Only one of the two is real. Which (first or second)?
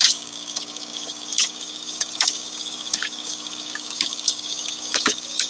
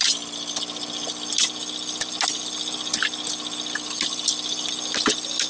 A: second